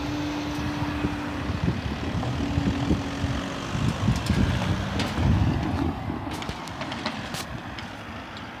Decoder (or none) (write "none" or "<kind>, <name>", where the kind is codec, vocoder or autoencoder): none